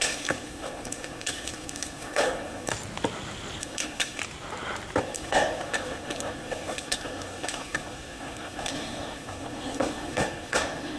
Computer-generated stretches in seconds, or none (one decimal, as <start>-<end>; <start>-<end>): 0.0-2.7; 3.6-4.2; 5.0-11.0